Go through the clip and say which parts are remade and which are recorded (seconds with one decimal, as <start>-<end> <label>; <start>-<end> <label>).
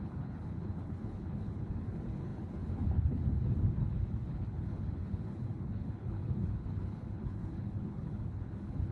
0.0-8.9 remade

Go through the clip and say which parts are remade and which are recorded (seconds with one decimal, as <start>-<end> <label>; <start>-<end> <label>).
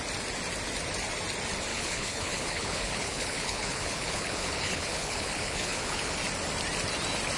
0.0-1.7 recorded; 1.7-6.1 remade; 6.1-7.4 recorded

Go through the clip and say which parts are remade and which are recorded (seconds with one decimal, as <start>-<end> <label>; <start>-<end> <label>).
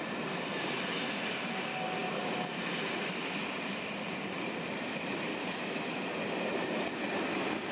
0.0-7.7 recorded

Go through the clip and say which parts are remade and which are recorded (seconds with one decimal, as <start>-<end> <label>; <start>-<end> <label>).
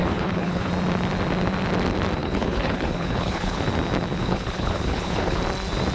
0.0-0.7 remade; 0.7-2.2 recorded; 2.2-3.6 remade; 3.6-4.2 recorded; 4.2-5.4 remade; 5.4-5.9 recorded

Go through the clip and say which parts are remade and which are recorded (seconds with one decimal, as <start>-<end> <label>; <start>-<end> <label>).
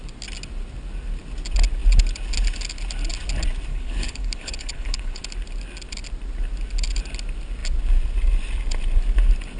0.0-3.7 recorded; 3.7-5.2 remade; 5.2-9.6 recorded